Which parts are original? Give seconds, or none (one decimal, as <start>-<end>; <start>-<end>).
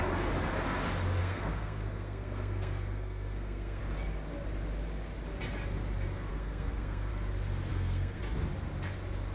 0.0-1.2; 3.8-6.3; 7.1-7.7; 8.2-9.3